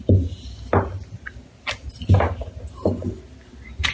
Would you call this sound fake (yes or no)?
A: no